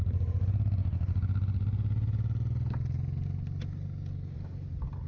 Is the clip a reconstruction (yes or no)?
no